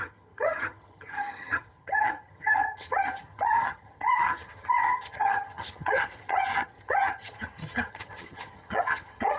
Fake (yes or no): yes